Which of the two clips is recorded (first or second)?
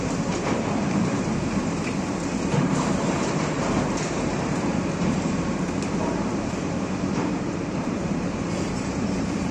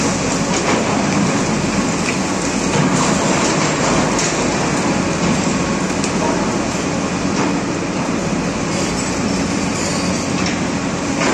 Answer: second